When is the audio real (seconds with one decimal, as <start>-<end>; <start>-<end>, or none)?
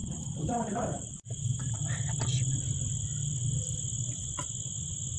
1.7-5.2